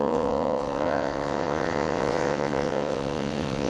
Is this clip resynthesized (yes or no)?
yes